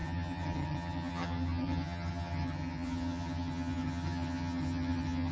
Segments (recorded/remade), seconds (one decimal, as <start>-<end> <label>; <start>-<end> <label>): 0.0-5.3 remade